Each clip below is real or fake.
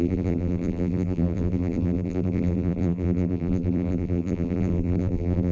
fake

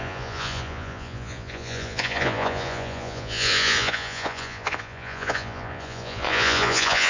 fake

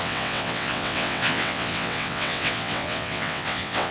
fake